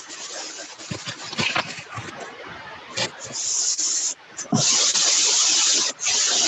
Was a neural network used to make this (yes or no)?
no